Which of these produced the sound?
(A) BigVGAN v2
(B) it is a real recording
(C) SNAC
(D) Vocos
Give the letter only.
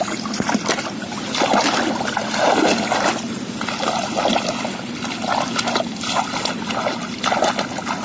B